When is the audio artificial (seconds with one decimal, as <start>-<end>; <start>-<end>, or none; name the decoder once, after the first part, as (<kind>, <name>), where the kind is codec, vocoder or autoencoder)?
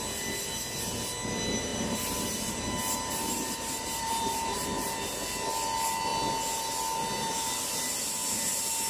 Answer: 1.7-4.9 (vocoder, BigVGAN v2)